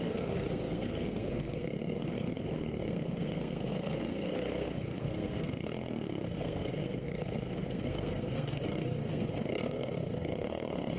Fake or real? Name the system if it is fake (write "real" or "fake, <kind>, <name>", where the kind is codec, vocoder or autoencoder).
fake, codec, SNAC